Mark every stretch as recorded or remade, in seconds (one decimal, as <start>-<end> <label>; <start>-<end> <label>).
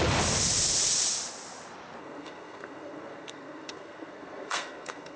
0.0-2.0 recorded; 2.0-5.2 remade